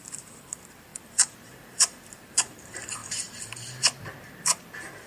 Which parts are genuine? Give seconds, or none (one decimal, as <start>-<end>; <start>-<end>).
3.0-5.1